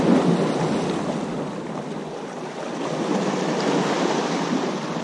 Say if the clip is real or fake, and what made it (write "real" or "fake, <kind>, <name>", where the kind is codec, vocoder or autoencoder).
real